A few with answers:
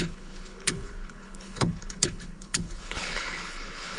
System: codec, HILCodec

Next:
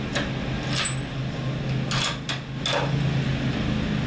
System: none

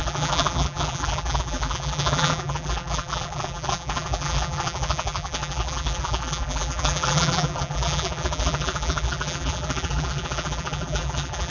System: vocoder, BigVGAN v2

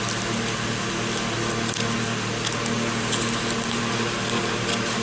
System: none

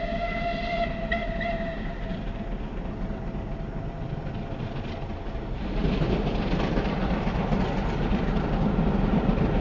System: none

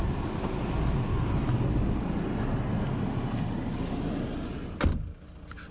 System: none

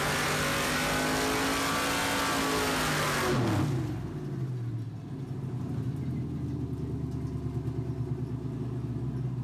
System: none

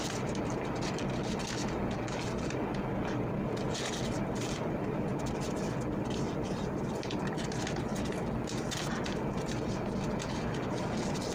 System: none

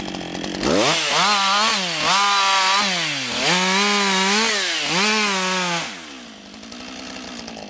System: none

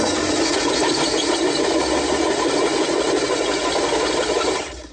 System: none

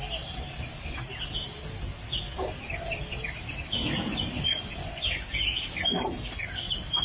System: none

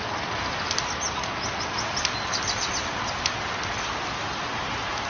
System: none